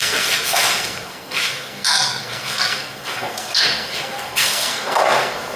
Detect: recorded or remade remade